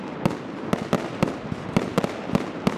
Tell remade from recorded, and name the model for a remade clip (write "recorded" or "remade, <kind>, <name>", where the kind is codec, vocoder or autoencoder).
recorded